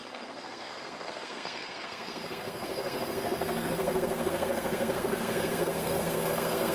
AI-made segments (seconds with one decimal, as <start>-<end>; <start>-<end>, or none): 0.0-6.7